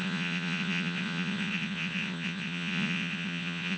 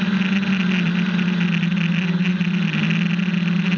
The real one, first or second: second